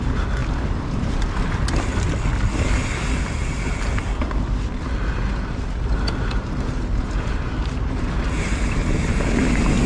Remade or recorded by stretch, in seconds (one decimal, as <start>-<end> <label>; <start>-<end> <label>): 0.0-9.9 recorded

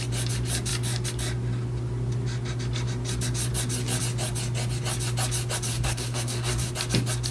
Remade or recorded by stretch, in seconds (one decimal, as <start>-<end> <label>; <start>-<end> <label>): 0.0-5.7 recorded; 5.7-6.7 remade; 6.7-7.3 recorded

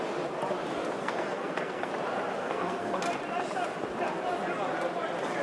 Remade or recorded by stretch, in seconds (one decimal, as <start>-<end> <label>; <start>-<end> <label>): 0.0-1.0 recorded; 1.0-1.9 remade; 1.9-2.4 recorded; 2.4-3.0 remade; 3.0-5.4 recorded

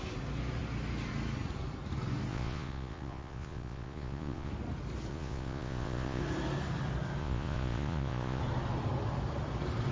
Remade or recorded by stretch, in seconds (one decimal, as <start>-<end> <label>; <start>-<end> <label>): 0.0-2.3 recorded; 2.3-4.5 remade; 4.5-5.1 recorded; 5.1-6.2 remade; 6.2-7.2 recorded; 7.2-8.4 remade; 8.4-9.9 recorded